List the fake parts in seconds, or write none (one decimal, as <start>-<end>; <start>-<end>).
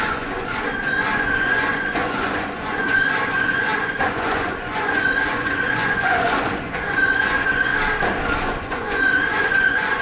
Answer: 0.0-7.7; 8.4-10.0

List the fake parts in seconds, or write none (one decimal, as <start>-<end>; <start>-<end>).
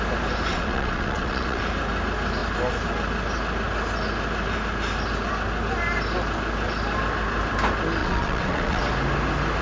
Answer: 0.5-1.6; 8.0-8.8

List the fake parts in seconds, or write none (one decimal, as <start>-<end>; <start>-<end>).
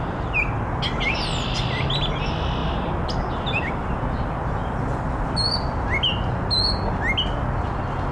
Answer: none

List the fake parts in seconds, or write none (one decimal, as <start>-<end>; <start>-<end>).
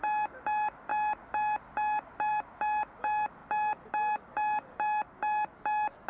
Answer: none